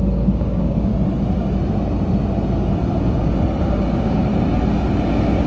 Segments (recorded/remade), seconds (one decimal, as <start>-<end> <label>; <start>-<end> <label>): 0.0-0.9 remade; 0.9-3.6 recorded; 3.6-4.3 remade; 4.3-5.1 recorded; 5.1-5.5 remade